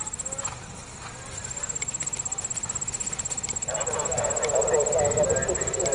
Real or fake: real